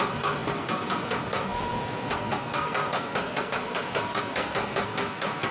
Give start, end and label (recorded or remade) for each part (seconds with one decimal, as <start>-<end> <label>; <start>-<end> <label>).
0.0-5.5 remade